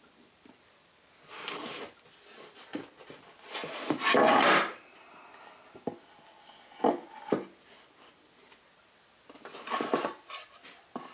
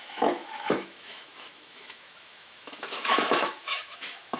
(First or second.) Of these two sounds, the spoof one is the second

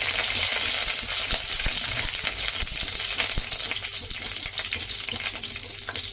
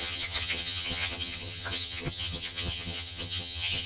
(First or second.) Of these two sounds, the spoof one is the second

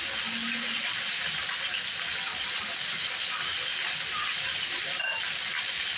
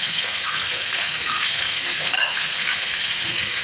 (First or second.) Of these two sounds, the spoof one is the second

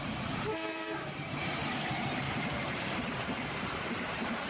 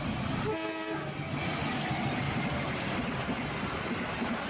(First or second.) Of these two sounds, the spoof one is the first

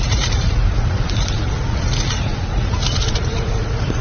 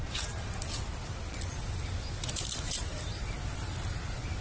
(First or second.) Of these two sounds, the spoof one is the first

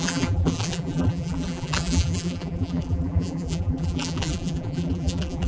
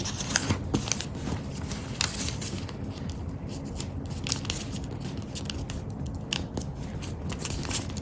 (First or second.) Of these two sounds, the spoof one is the first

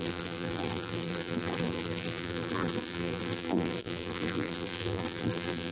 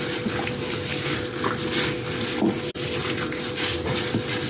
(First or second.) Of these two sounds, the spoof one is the first